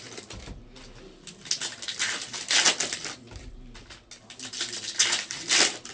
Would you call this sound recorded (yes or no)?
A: yes